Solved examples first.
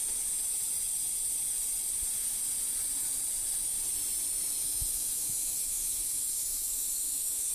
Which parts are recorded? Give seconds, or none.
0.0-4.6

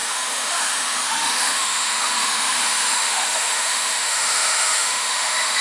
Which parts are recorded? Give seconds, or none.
none